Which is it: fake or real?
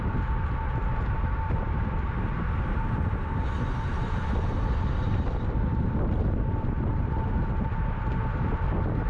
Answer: real